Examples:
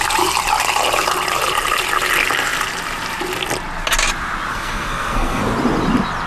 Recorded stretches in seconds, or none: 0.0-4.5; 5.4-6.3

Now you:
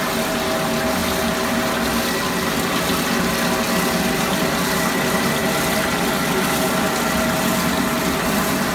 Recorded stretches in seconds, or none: 0.0-8.7

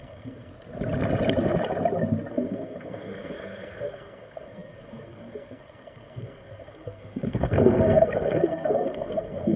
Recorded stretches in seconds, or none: 0.5-2.3

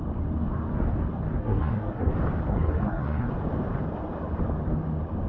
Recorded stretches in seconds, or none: 0.0-1.4; 2.1-2.5; 3.3-5.3

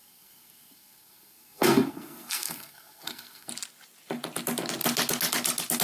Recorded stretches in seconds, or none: 3.5-5.8

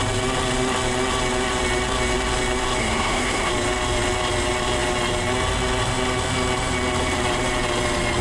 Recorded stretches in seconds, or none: 0.0-2.8; 3.5-8.2